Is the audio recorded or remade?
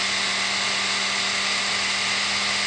recorded